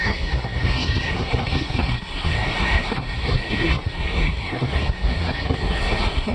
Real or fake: fake